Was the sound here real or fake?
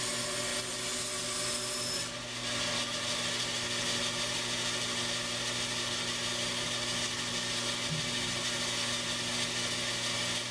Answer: real